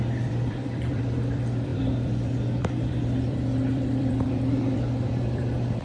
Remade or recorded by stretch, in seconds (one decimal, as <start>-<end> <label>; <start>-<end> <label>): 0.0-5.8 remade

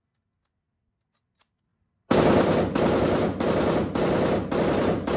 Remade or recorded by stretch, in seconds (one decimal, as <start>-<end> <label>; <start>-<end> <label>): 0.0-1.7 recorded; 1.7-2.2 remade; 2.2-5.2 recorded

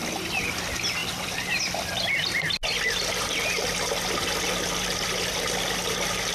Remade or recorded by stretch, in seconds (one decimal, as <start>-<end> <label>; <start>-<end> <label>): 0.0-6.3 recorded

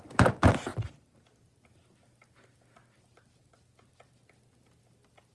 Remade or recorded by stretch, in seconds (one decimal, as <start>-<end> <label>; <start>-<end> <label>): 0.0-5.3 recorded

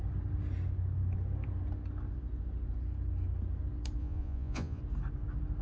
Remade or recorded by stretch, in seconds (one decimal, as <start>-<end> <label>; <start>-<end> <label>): 0.0-4.0 recorded; 4.0-4.8 remade; 4.8-5.6 recorded